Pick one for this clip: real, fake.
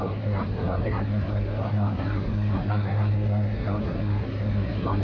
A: fake